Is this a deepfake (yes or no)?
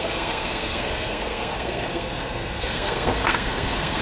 yes